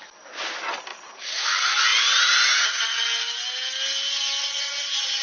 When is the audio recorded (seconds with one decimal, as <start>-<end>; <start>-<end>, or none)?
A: 0.0-0.9; 1.5-4.4